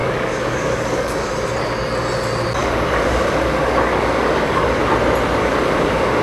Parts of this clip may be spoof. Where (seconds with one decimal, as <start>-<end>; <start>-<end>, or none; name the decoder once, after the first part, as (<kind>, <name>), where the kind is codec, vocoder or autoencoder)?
0.0-1.3 (codec, DAC); 2.6-4.8; 5.4-6.2